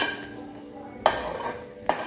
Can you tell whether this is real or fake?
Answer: real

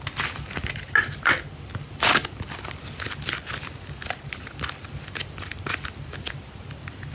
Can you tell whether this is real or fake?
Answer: real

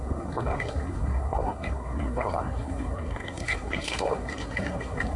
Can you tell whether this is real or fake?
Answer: fake